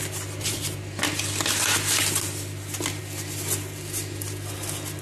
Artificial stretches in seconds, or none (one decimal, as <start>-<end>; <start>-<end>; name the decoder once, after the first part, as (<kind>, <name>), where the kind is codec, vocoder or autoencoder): none